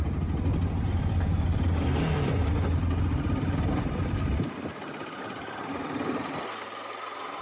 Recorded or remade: recorded